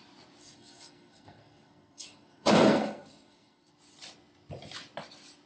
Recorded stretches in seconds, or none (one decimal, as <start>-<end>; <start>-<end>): 0.0-0.4; 3.7-5.5